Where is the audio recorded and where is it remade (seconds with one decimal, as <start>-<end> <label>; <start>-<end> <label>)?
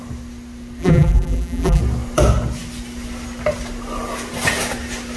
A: 0.0-0.8 recorded; 0.8-1.8 remade; 1.8-5.2 recorded